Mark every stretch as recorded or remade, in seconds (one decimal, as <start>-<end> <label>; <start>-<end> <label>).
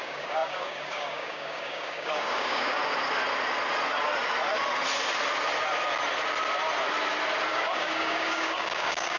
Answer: 0.0-2.8 remade; 2.8-7.5 recorded; 7.5-9.2 remade